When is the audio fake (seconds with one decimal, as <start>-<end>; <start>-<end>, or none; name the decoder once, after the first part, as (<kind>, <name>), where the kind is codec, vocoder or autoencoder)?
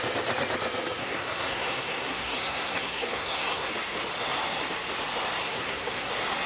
1.0-3.7 (codec, SNAC); 5.4-6.1